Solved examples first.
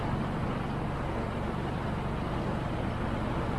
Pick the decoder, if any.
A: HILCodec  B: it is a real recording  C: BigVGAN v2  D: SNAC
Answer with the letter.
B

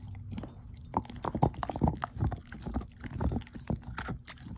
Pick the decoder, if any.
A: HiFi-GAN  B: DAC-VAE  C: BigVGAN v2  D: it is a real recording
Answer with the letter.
D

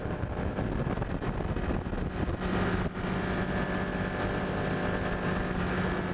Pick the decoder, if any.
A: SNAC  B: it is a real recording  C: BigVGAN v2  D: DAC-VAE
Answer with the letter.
B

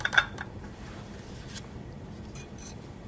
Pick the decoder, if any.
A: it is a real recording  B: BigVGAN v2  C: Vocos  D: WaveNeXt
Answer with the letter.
B